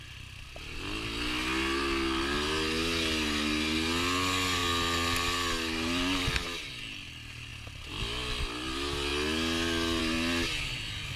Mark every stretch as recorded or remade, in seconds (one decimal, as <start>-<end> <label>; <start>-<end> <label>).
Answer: 0.0-11.2 recorded